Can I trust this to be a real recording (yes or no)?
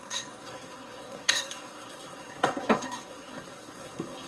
no